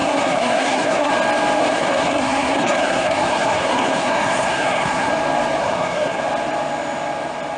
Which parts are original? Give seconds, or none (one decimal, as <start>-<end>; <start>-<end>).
1.1-1.6; 5.1-5.6; 6.2-7.6